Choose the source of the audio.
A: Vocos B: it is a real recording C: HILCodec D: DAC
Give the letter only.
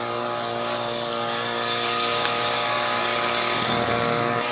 D